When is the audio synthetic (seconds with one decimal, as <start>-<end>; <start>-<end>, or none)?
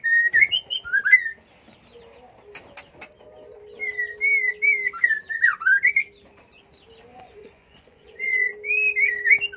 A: 7.1-8.5